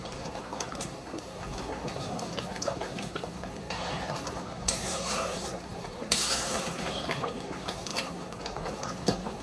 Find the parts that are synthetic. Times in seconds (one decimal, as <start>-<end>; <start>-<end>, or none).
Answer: 0.0-9.4